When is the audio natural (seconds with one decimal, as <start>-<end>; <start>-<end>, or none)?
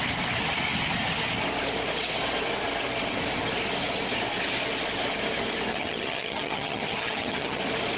0.0-5.7; 7.6-8.0